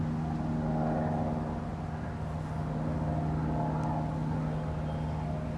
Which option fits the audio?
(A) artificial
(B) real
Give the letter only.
B